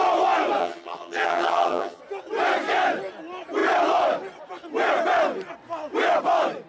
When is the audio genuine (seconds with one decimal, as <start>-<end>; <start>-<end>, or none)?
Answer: 0.0-0.6; 2.0-6.7